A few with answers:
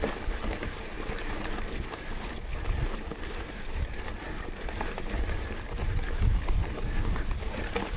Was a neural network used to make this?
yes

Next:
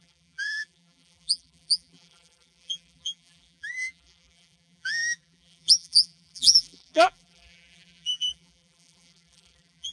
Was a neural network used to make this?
yes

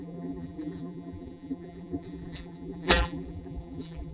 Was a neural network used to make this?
yes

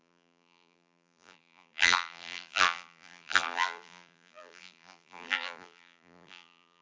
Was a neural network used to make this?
yes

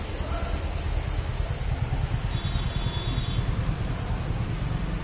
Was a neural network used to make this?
yes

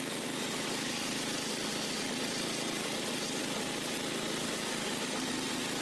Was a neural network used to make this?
no